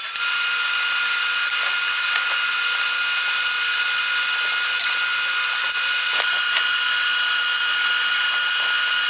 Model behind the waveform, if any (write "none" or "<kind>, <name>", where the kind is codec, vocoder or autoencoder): none